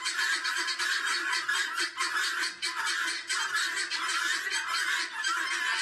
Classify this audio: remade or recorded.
recorded